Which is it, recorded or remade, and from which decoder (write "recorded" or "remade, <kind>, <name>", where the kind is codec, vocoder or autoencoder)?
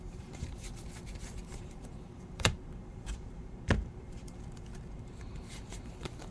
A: remade, vocoder, BigVGAN v2